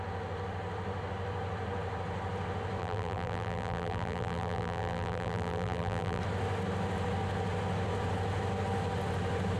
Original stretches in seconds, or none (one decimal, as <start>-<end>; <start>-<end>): 0.0-2.8; 6.2-9.6